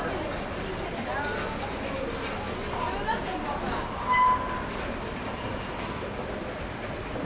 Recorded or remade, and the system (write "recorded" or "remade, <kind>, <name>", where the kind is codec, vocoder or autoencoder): recorded